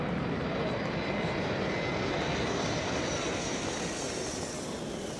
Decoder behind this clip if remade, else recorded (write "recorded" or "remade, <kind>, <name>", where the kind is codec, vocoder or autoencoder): recorded